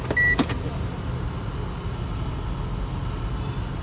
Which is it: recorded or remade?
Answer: recorded